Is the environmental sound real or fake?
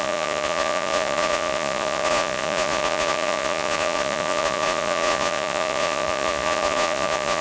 fake